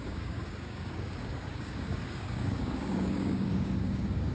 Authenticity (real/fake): fake